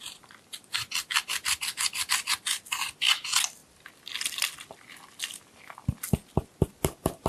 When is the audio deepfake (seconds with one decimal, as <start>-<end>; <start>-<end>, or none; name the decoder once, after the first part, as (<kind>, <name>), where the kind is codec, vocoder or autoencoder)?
none